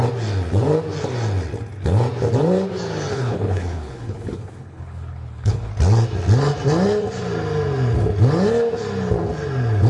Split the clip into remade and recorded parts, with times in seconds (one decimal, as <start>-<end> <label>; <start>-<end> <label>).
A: 0.0-3.1 recorded; 3.1-5.7 remade; 5.7-9.9 recorded